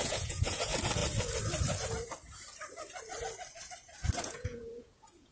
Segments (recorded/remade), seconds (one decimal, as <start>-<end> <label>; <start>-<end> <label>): 0.0-1.0 remade; 1.0-4.2 recorded; 4.2-5.3 remade